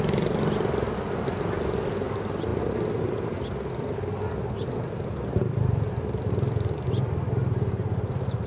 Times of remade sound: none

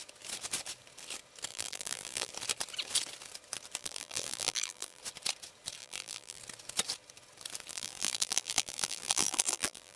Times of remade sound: 1.5-2.3 (vocoder, BigVGAN v2); 3.8-5.0; 5.8-6.4; 7.7-10.0

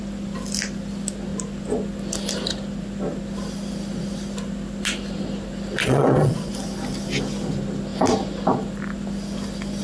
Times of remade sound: 5.8-6.5 (vocoder, Vocos)

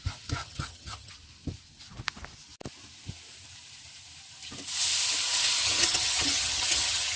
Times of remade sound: 0.4-1.1 (vocoder, HiFi-GAN); 5.6-7.2

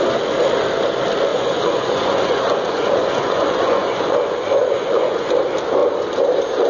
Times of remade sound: 1.3-5.3 (vocoder, Vocos)